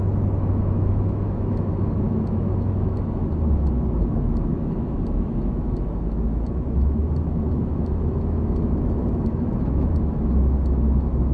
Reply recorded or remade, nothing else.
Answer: remade